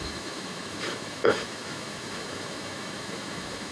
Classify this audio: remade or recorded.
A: remade